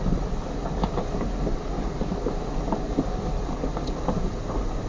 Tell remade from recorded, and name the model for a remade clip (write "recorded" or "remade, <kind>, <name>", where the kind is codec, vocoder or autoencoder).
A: recorded